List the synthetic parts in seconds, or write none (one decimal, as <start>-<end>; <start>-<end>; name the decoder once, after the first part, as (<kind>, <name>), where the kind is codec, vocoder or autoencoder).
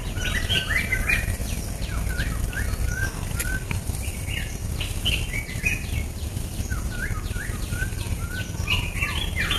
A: 0.0-1.4 (vocoder, BigVGAN v2); 6.4-9.6